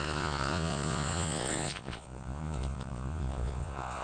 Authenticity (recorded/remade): remade